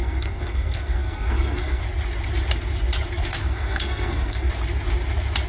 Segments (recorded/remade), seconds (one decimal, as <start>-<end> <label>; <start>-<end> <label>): 0.0-1.8 remade; 1.8-3.4 recorded; 3.4-4.5 remade; 4.5-5.5 recorded